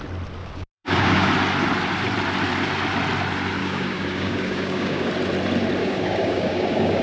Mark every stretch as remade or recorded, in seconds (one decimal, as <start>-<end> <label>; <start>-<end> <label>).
0.0-0.4 recorded; 0.4-1.3 remade; 1.3-3.6 recorded; 3.6-5.1 remade; 5.1-5.8 recorded; 5.8-7.0 remade